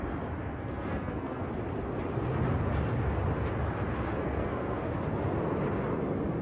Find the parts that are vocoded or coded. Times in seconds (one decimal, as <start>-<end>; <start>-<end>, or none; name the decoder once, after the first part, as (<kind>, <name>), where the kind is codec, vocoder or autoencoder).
0.4-1.5 (codec, SNAC); 4.2-4.9